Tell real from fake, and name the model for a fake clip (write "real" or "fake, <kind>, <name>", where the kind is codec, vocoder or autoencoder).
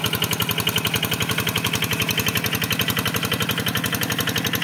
real